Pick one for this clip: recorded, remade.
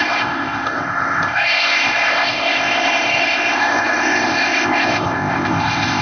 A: remade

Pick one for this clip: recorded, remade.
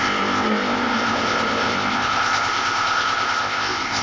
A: remade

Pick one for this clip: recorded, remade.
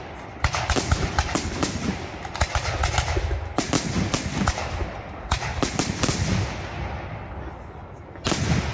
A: recorded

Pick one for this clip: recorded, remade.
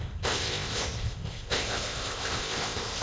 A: remade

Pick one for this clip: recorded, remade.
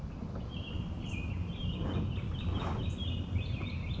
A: recorded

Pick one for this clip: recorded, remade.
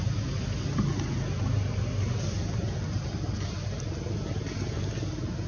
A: recorded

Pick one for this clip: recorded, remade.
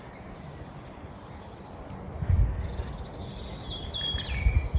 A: recorded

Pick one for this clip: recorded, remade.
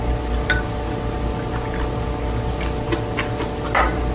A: recorded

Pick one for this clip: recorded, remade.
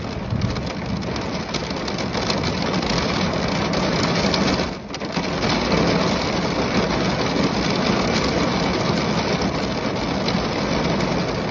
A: recorded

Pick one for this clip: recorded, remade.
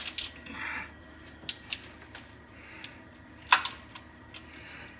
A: recorded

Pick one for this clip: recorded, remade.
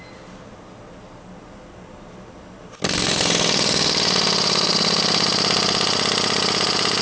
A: recorded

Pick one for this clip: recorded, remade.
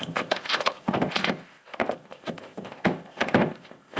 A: remade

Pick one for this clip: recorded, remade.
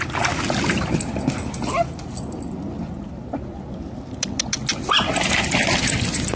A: recorded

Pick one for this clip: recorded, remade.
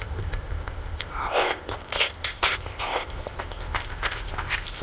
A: remade